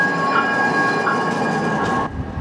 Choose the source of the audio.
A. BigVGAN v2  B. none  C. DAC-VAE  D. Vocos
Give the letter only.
B